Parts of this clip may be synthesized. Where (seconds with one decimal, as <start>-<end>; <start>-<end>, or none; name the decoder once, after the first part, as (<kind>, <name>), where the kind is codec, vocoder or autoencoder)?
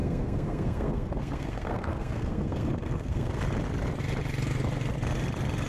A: 0.0-3.4 (codec, SNAC)